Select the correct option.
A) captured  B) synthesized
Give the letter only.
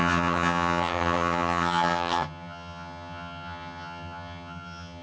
B